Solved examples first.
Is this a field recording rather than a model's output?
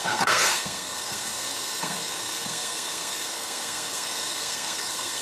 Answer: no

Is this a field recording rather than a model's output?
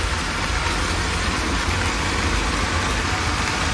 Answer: yes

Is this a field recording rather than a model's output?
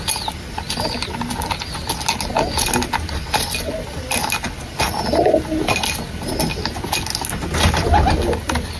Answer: yes